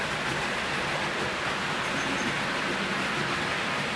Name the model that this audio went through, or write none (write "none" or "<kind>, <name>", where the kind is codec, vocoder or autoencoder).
none